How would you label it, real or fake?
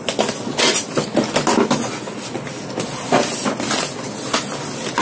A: real